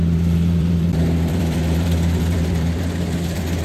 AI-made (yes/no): yes